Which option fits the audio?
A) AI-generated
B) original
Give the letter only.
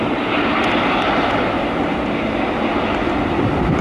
B